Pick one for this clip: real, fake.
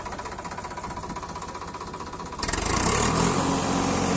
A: real